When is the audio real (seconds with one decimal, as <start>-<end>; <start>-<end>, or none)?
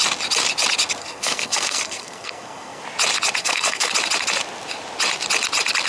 0.0-1.0; 2.8-3.4; 3.9-5.9